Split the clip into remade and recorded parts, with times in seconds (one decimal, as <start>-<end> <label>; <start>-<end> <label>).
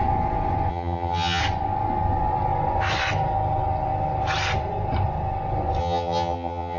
0.0-0.7 recorded; 0.7-1.4 remade; 1.4-5.8 recorded; 5.8-6.8 remade